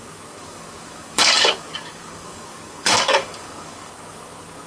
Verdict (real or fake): fake